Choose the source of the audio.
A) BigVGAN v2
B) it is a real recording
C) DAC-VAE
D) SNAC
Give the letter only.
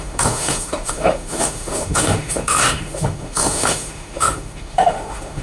C